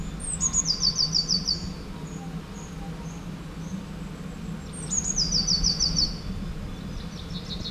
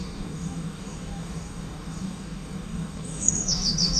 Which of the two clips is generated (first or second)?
second